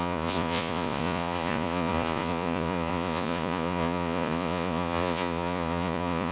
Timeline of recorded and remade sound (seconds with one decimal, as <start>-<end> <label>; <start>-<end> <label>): 0.0-6.3 remade